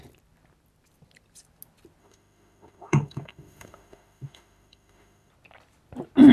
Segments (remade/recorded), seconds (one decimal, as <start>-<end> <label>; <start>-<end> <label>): 0.0-2.0 recorded; 2.0-5.3 remade; 5.3-6.3 recorded